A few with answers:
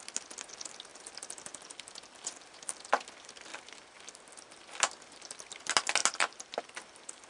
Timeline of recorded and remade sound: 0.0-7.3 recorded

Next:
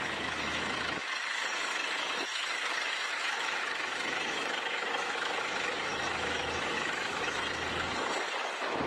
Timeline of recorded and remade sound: 0.0-8.9 remade

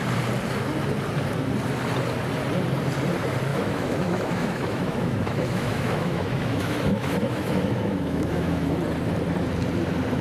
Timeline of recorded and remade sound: 0.0-3.5 recorded; 3.5-8.7 remade; 8.7-10.2 recorded

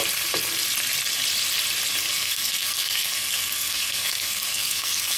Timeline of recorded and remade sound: 0.0-2.1 recorded; 2.1-5.2 remade

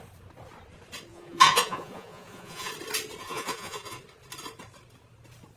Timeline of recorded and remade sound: 0.0-1.1 recorded; 1.1-2.7 remade; 2.7-3.2 recorded; 3.2-4.0 remade; 4.0-5.6 recorded

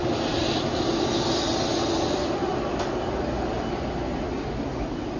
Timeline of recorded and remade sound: 0.0-5.2 recorded

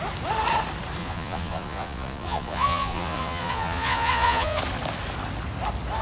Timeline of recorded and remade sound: 0.0-1.0 recorded; 1.0-4.6 remade; 4.6-6.0 recorded